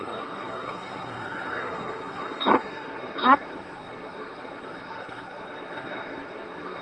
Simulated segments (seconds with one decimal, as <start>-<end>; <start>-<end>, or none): 0.0-6.8